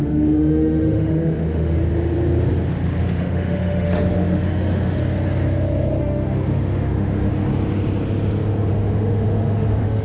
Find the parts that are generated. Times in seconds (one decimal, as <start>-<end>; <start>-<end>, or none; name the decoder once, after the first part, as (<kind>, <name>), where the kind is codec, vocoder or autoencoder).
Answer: 0.0-1.8 (autoencoder, DAC-VAE); 3.0-5.0; 6.0-7.3; 8.7-10.0